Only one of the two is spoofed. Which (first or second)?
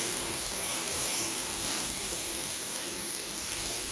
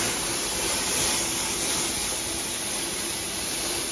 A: first